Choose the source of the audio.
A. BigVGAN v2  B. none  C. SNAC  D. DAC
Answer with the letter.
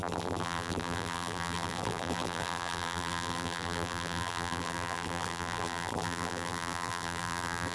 A